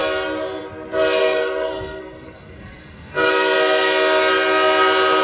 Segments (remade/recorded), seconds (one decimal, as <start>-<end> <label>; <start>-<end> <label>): 0.0-1.2 recorded; 1.2-3.3 remade; 3.3-5.2 recorded